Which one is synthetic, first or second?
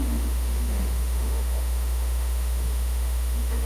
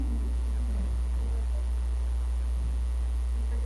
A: first